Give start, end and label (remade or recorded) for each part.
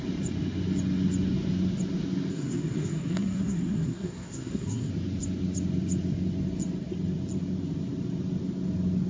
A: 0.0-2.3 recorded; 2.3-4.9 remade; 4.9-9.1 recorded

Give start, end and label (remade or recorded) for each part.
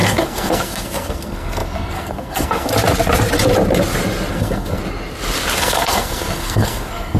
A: 0.0-2.7 remade; 2.7-4.3 recorded; 4.3-4.8 remade; 4.8-5.6 recorded; 5.6-7.2 remade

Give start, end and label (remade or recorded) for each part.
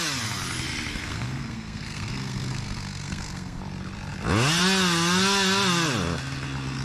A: 0.0-0.9 recorded; 0.9-3.6 remade; 3.6-6.8 recorded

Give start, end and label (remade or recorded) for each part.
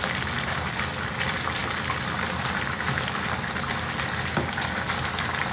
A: 0.0-5.5 recorded